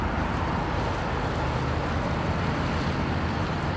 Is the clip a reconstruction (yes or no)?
no